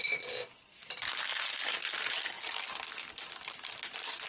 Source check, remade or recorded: recorded